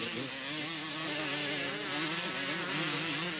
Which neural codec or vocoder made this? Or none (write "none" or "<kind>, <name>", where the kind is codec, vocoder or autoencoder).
none